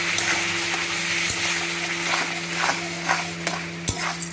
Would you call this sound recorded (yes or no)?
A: yes